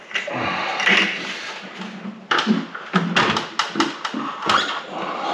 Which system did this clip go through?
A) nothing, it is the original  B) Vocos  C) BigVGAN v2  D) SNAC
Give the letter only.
A